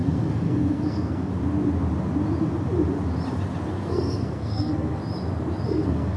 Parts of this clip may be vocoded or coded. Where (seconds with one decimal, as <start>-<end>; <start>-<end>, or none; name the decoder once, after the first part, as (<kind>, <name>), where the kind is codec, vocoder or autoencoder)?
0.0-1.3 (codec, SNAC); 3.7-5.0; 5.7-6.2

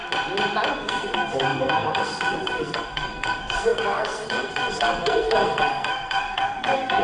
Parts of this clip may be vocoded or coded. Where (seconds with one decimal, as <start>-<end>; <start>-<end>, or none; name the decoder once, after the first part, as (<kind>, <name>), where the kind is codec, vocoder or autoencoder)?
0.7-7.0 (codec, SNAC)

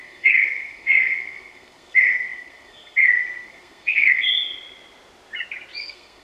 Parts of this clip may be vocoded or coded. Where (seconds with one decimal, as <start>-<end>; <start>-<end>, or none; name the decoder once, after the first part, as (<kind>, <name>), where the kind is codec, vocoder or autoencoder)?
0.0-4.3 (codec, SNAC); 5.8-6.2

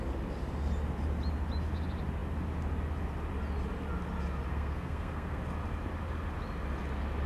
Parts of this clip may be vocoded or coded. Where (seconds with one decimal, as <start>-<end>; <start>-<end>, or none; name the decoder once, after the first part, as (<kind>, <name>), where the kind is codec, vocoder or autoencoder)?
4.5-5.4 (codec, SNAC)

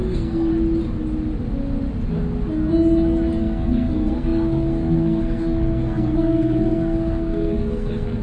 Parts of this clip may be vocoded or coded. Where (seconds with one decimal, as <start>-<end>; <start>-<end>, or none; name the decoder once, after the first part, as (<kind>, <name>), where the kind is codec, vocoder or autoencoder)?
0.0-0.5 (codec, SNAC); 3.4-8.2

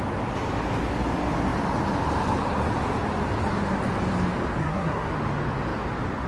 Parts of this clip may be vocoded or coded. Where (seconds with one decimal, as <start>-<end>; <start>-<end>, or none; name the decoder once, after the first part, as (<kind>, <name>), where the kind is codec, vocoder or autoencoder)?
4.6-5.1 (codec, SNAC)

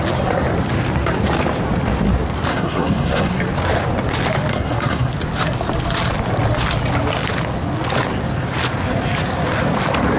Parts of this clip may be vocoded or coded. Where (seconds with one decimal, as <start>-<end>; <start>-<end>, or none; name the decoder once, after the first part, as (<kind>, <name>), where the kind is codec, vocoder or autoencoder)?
2.5-3.3 (codec, SNAC); 4.5-5.1